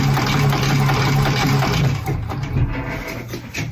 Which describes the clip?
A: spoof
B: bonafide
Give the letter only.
B